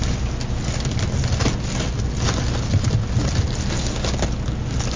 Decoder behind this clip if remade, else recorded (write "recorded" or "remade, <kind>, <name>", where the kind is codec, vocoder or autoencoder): recorded